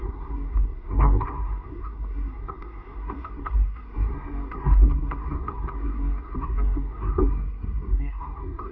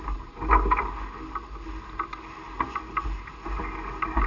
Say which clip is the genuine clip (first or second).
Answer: second